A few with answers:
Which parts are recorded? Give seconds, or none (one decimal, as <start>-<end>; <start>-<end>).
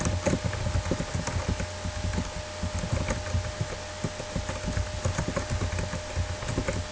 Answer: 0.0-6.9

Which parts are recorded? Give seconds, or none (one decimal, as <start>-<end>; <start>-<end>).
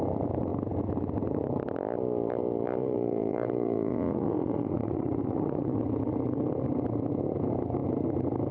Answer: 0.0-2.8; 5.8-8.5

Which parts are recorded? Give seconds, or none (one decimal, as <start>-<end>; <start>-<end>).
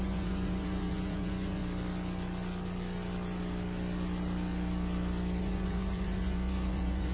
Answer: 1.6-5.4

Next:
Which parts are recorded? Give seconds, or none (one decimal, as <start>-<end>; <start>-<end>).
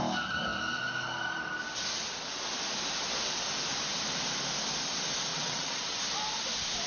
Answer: 0.0-5.3; 6.0-6.9